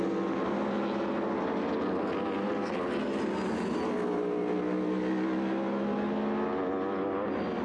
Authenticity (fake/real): real